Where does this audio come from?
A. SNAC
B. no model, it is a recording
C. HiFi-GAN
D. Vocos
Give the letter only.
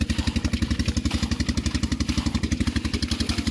B